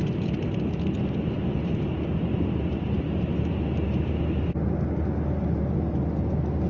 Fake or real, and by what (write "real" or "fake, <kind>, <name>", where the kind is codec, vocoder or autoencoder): real